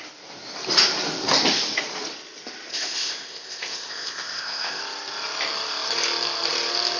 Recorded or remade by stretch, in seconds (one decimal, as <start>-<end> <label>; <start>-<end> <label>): 0.0-2.7 recorded; 2.7-4.8 remade; 4.8-7.0 recorded